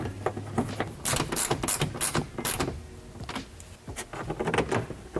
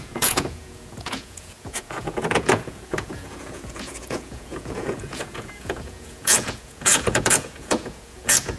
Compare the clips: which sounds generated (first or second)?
second